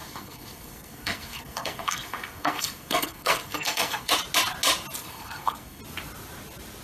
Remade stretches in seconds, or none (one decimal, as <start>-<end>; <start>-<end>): 0.0-4.1; 5.0-5.8